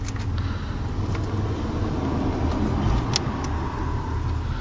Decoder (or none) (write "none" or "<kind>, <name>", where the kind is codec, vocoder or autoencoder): none